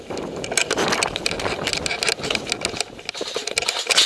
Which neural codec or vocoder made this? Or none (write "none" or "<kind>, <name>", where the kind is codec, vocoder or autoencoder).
none